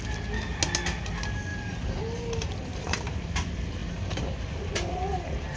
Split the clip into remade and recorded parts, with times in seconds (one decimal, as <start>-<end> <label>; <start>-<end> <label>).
0.0-1.5 recorded; 1.5-2.0 remade; 2.0-2.7 recorded; 2.7-3.2 remade; 3.2-3.8 recorded; 3.8-4.7 remade; 4.7-5.6 recorded